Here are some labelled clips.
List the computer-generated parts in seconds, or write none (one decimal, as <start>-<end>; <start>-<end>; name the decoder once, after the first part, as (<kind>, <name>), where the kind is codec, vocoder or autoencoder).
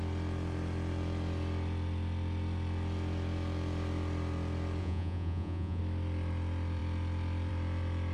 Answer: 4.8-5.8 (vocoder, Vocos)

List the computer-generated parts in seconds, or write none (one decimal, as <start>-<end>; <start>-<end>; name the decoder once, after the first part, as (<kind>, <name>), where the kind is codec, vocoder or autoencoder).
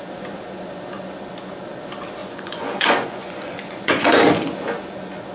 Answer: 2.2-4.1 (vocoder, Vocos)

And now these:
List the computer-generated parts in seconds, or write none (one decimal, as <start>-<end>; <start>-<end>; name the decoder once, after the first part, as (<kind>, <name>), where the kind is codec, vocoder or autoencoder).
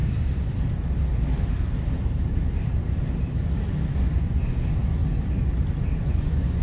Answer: 3.9-5.0 (vocoder, Vocos); 6.0-6.6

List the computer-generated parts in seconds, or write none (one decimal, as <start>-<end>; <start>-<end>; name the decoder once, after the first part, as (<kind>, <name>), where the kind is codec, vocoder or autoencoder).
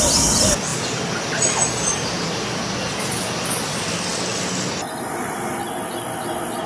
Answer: none